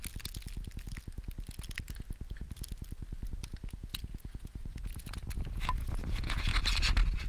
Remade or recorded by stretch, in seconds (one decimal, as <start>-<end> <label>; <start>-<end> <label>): 0.0-3.7 recorded; 3.7-6.5 remade; 6.5-7.3 recorded